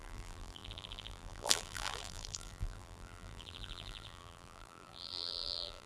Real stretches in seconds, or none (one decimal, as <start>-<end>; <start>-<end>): none